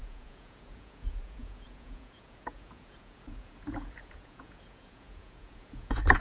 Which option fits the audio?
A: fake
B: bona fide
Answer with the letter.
A